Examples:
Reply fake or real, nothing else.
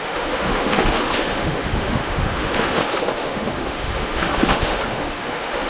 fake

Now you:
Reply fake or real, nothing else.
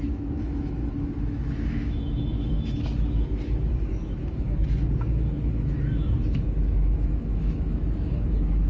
fake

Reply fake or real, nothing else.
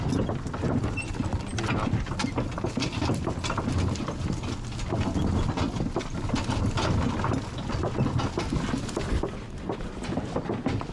real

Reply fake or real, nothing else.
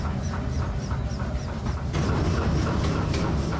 real